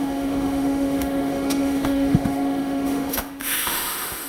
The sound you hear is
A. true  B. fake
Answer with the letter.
B